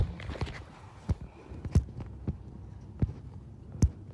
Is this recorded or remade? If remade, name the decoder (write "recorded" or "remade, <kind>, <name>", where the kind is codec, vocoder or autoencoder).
recorded